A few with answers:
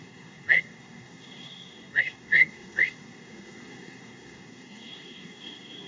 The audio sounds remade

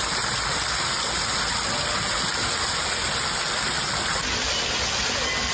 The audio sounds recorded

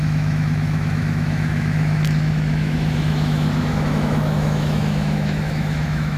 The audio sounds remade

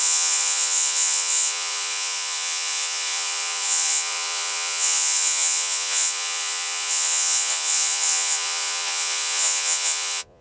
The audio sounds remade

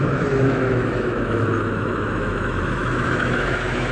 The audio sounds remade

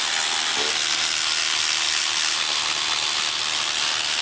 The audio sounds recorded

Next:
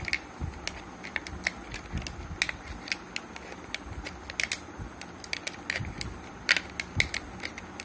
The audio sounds recorded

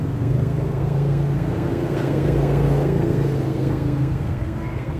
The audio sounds remade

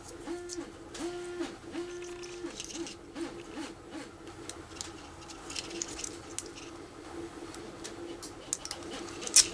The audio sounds recorded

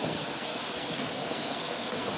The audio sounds remade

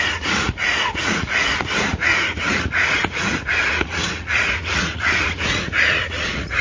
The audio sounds remade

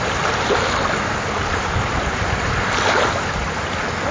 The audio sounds recorded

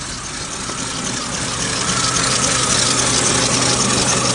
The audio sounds recorded